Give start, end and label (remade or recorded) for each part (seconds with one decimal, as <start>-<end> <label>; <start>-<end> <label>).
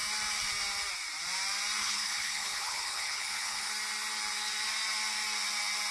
0.0-1.8 recorded; 1.8-3.7 remade; 3.7-5.9 recorded